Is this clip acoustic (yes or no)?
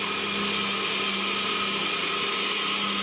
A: yes